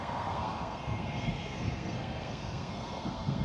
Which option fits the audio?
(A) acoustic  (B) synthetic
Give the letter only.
B